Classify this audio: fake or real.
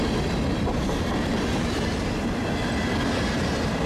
real